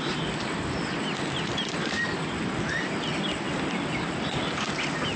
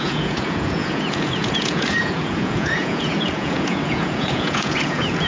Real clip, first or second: first